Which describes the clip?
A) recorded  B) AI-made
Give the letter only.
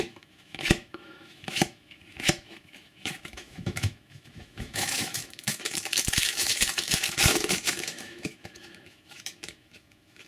B